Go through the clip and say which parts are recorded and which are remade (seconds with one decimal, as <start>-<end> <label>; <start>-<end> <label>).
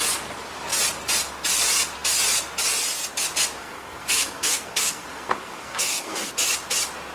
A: 0.0-3.6 recorded; 3.6-6.3 remade; 6.3-7.1 recorded